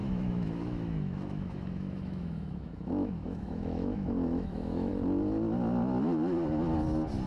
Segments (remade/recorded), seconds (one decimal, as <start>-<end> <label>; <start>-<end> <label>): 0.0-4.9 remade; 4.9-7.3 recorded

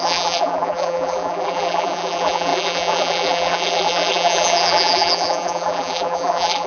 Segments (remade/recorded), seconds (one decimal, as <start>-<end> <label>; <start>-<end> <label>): 0.0-6.7 remade

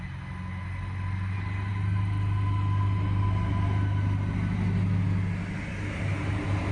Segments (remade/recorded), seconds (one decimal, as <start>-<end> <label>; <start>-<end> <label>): 0.0-6.7 recorded

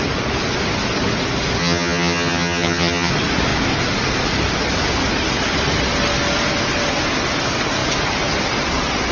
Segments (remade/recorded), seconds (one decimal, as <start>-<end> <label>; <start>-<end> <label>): 0.0-1.6 recorded; 1.6-3.1 remade; 3.1-9.1 recorded

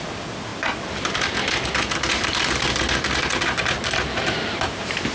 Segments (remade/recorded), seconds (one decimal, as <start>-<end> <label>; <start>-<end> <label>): 0.0-5.1 recorded